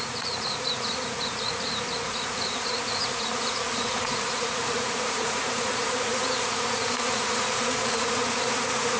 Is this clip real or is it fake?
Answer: fake